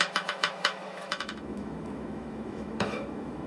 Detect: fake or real fake